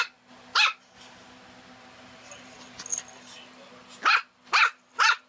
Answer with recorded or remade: recorded